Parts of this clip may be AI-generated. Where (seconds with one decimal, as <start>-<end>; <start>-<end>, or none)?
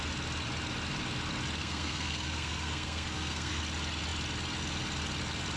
1.6-3.6